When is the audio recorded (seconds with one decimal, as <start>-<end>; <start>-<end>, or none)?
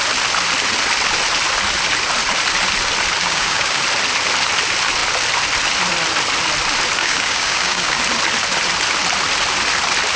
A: 0.0-3.2; 3.8-7.0; 8.0-10.2